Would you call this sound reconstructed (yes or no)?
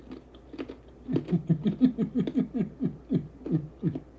no